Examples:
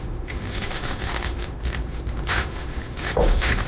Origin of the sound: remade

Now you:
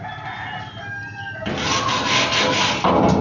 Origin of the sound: recorded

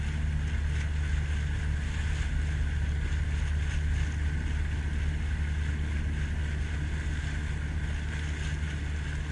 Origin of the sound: recorded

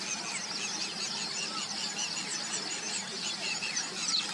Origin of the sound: recorded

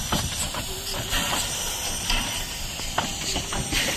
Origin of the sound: recorded